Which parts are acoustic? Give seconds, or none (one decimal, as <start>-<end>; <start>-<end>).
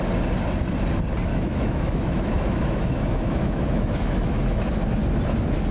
0.0-1.3; 4.7-5.7